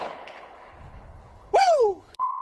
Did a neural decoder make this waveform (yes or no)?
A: yes